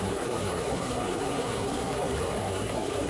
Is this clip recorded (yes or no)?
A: no